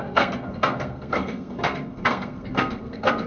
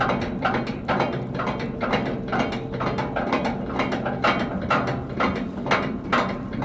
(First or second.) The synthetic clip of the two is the first